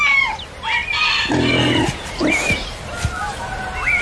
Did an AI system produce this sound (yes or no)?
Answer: no